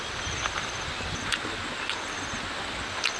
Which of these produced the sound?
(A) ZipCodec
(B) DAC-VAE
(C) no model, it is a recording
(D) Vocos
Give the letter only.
C